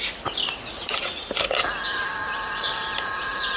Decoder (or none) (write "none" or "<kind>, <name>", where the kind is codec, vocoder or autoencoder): none